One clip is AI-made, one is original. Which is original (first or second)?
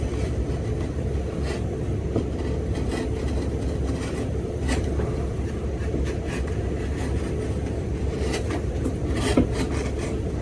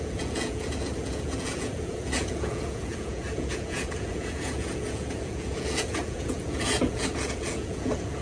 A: first